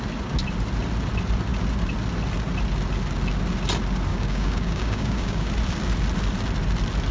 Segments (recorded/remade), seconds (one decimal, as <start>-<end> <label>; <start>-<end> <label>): 0.0-4.1 recorded; 4.1-5.5 remade; 5.5-7.1 recorded